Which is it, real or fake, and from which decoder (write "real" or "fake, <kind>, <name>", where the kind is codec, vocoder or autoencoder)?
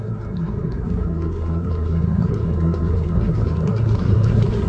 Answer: fake, codec, SNAC